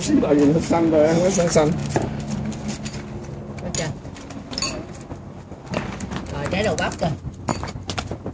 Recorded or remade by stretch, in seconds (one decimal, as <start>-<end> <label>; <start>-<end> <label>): 0.0-8.3 recorded